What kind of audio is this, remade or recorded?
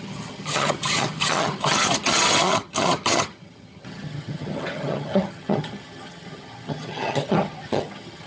remade